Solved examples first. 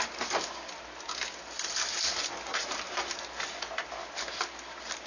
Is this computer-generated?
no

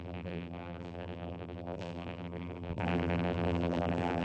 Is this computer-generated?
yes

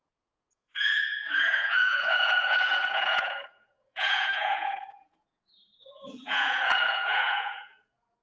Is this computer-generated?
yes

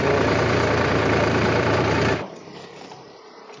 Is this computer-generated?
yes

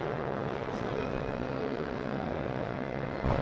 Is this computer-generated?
yes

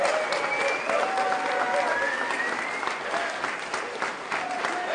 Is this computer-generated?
no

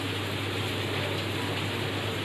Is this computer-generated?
yes